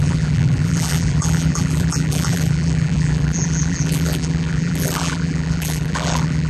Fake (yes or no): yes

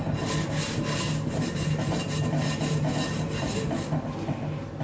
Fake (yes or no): no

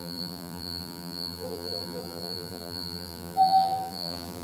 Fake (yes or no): yes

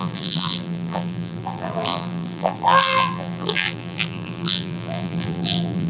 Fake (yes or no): yes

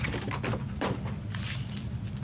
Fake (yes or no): no